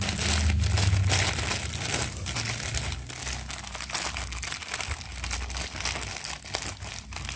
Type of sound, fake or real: real